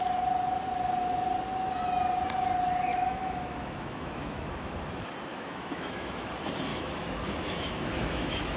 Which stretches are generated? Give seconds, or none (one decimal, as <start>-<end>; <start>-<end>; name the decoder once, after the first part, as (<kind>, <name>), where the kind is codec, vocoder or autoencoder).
2.9-4.8 (autoencoder, DAC-VAE); 5.3-6.3; 6.7-8.6